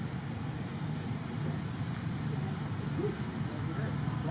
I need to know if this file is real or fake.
real